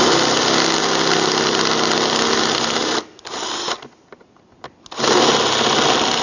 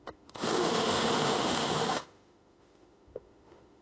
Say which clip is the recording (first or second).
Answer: first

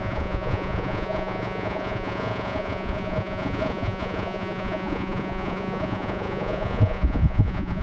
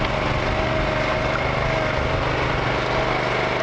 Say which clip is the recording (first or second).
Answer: second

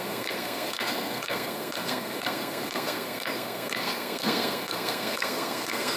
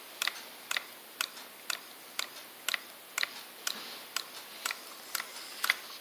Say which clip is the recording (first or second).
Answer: second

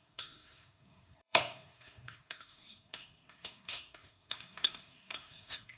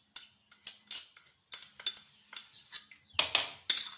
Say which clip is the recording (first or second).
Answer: second